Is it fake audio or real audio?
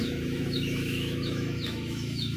fake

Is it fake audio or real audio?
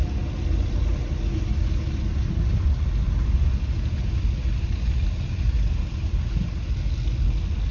real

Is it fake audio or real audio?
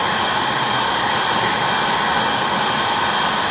real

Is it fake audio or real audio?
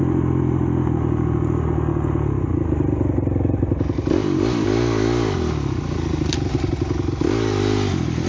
real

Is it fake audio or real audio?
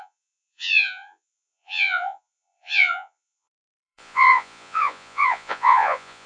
fake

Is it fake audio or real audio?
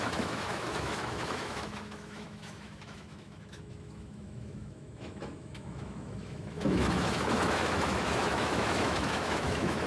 fake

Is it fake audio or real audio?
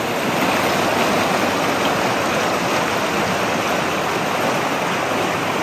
real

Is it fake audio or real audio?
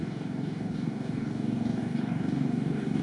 fake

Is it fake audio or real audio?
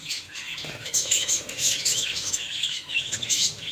fake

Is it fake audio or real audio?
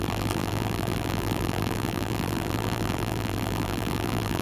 fake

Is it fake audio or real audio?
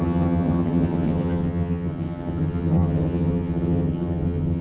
fake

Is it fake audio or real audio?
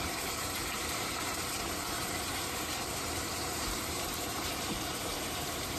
fake